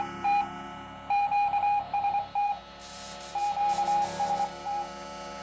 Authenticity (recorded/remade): recorded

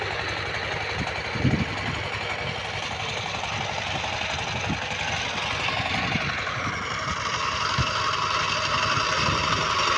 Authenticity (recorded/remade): recorded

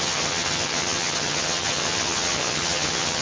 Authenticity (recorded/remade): remade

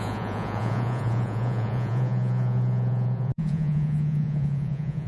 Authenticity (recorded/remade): remade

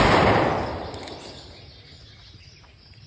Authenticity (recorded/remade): recorded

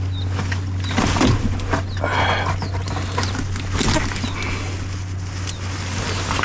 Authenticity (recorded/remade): recorded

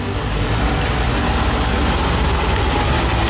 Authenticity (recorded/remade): recorded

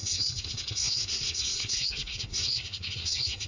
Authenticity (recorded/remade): remade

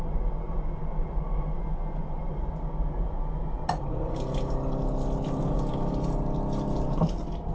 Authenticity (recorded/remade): recorded